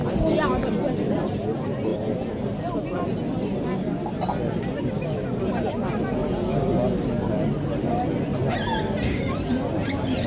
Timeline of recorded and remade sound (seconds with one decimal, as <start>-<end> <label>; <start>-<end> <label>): 0.0-10.3 recorded